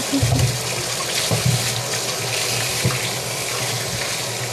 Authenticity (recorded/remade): recorded